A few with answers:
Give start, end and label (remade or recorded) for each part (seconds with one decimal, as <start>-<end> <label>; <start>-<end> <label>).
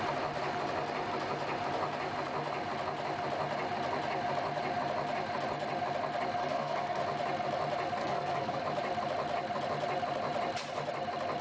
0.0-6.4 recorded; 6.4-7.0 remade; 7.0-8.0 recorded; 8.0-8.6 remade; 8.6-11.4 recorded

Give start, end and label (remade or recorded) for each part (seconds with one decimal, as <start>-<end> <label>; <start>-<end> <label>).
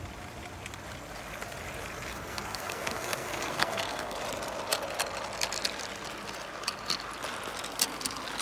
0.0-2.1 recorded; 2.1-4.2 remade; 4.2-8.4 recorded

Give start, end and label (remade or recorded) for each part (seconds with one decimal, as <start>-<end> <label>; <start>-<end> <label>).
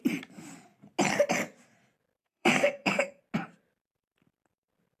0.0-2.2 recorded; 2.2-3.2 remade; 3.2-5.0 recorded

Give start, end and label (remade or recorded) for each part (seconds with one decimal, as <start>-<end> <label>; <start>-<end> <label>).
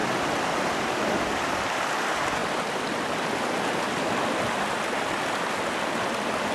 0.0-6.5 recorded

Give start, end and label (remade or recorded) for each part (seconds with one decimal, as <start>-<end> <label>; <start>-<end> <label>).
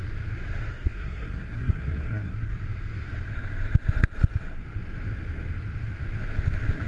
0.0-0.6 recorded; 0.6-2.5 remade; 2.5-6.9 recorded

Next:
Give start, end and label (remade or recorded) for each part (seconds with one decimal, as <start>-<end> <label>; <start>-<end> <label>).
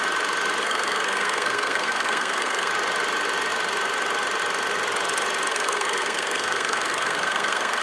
0.0-0.6 recorded; 0.6-2.7 remade; 2.7-5.5 recorded; 5.5-7.8 remade